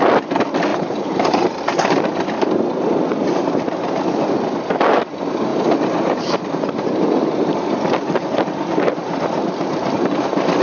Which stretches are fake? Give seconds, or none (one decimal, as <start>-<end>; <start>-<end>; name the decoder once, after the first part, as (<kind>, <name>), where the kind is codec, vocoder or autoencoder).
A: 0.7-2.0 (vocoder, BigVGAN v2); 5.5-7.1